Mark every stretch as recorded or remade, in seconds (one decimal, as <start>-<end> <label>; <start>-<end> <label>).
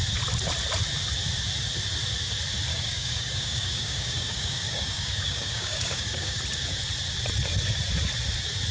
0.0-2.7 recorded; 2.7-6.4 remade; 6.4-8.7 recorded